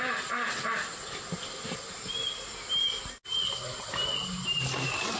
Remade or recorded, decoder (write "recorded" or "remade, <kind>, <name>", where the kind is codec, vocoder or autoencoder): recorded